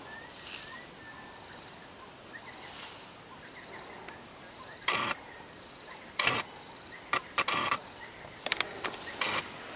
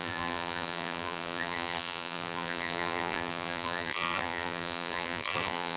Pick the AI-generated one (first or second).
second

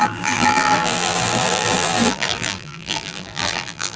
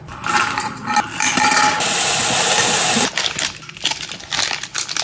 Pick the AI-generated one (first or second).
first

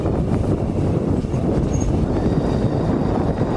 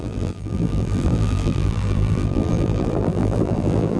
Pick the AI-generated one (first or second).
second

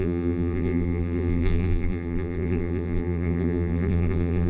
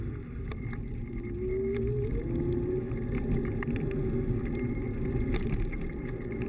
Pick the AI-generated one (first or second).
first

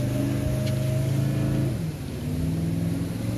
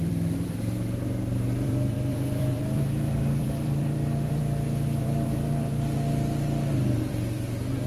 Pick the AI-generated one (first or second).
second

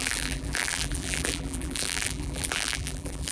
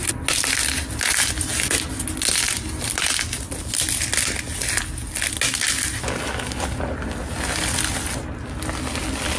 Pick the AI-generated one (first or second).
first